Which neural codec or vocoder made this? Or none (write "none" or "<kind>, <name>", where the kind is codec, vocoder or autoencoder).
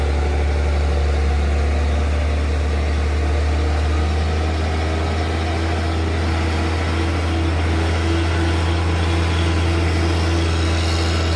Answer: none